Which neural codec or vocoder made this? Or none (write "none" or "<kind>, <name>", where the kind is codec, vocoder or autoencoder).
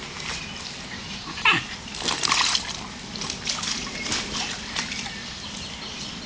none